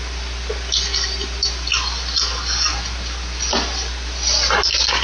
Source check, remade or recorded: recorded